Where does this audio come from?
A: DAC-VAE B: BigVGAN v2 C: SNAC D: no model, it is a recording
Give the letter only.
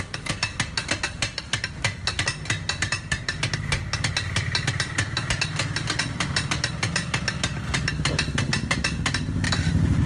D